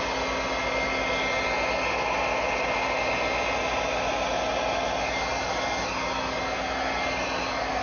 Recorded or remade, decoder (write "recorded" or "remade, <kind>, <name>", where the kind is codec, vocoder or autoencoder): recorded